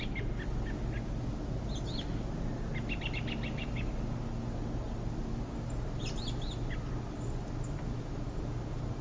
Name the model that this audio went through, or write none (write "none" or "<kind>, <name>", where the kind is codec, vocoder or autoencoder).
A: none